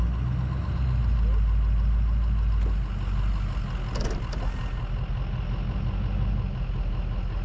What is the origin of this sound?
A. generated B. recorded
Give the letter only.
B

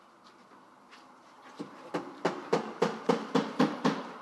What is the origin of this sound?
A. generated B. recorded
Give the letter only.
A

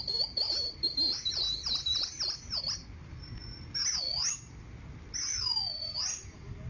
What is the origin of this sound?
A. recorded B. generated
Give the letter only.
A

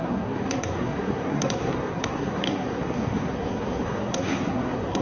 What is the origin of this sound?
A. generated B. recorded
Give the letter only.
A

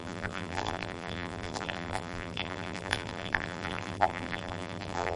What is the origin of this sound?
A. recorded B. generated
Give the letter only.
B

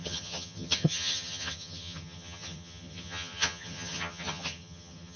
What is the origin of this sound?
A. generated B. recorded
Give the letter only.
A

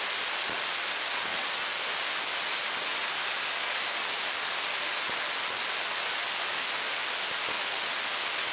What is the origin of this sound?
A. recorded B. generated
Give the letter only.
A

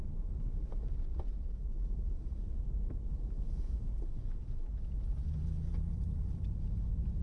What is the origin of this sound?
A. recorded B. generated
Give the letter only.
B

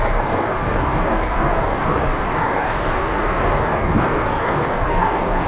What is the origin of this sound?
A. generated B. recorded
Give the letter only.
A